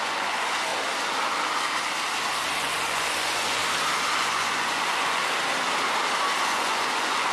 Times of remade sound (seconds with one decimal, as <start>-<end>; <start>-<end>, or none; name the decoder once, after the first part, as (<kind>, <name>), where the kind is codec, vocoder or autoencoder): 0.0-0.7 (vocoder, Vocos); 2.6-3.6; 4.2-5.2; 6.4-7.3